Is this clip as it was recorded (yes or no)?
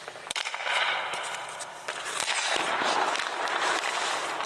yes